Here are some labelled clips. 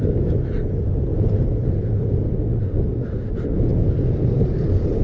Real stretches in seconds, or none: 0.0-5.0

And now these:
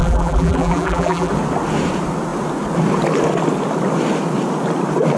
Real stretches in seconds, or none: 1.3-5.2

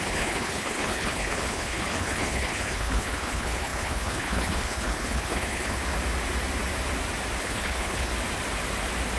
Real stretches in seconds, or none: 5.8-7.4; 8.1-9.2

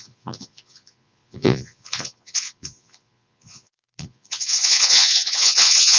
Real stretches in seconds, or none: none

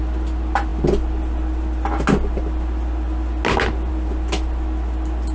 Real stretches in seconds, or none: 0.0-5.3

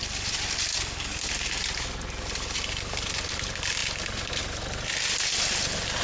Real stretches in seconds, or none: 0.0-0.7; 1.3-6.0

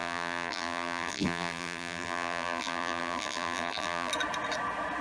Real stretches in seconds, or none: 4.1-5.0